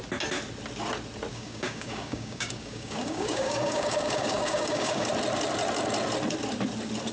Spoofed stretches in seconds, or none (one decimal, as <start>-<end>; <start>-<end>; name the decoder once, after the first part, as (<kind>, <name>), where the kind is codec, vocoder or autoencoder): 1.3-5.1 (codec, DAC)